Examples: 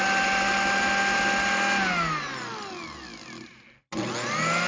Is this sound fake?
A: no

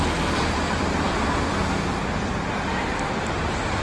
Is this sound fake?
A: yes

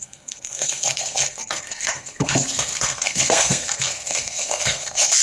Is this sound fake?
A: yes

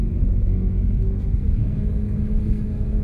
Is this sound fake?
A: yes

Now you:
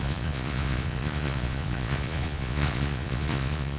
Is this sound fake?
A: yes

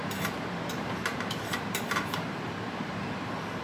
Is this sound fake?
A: yes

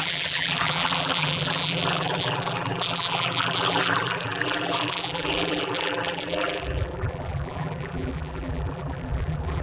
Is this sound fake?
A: yes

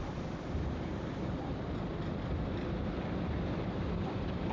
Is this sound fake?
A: yes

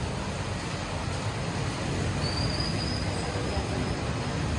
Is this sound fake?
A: no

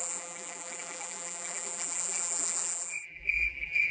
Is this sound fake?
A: yes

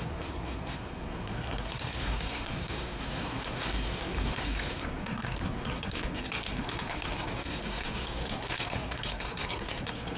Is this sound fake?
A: yes